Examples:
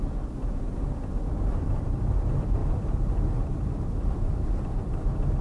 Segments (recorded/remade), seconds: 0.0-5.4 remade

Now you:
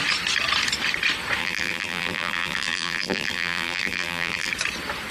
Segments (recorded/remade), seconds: 0.0-1.4 recorded; 1.4-4.5 remade; 4.5-5.1 recorded

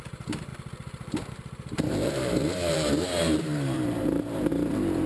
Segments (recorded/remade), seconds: 0.0-0.5 remade; 0.5-1.3 recorded; 1.3-5.1 remade

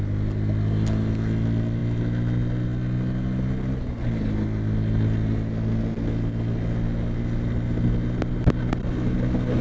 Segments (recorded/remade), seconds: 0.0-9.6 recorded

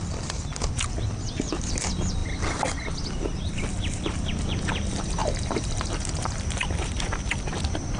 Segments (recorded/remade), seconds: 0.0-5.2 recorded; 5.2-7.2 remade; 7.2-8.0 recorded

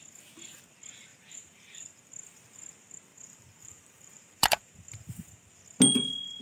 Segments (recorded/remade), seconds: 0.0-1.1 recorded; 1.1-2.1 remade; 2.1-3.1 recorded; 3.1-5.5 remade; 5.5-6.4 recorded